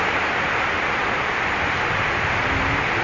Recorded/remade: recorded